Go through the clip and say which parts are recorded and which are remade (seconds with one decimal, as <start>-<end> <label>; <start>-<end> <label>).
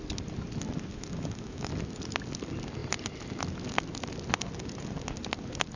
0.0-0.9 recorded; 0.9-1.7 remade; 1.7-5.8 recorded